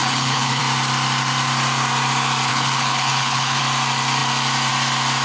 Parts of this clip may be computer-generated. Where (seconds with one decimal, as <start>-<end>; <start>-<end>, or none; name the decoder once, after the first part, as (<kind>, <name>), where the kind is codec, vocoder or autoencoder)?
0.0-0.6 (codec, HILCodec); 2.5-3.6